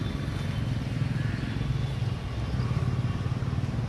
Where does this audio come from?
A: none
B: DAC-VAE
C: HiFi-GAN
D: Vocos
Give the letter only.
A